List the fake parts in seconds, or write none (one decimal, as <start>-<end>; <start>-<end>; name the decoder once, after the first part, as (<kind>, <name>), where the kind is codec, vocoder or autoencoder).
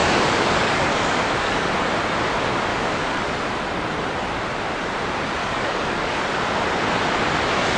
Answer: 0.0-1.7 (codec, DAC); 2.7-3.3; 5.4-6.2